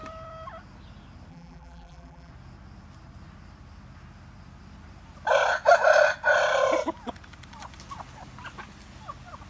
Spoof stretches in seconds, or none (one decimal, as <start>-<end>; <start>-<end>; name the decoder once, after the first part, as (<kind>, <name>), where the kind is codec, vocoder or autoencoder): 1.3-2.3 (vocoder, BigVGAN v2)